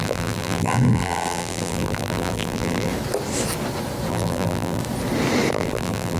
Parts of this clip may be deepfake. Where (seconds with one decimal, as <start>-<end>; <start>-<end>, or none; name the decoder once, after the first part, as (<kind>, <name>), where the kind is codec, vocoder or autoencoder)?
0.0-2.9 (vocoder, BigVGAN v2); 4.1-4.8; 5.5-6.2